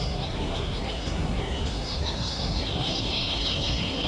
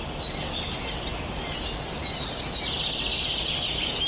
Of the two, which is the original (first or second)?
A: second